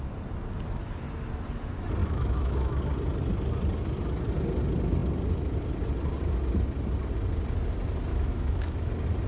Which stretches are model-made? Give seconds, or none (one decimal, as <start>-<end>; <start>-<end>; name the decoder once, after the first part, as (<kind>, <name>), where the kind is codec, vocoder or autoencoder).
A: 2.0-2.8 (autoencoder, DAC-VAE); 8.1-8.9